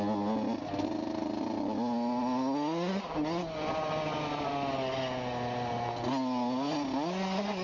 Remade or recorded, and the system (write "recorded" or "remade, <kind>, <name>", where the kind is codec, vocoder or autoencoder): recorded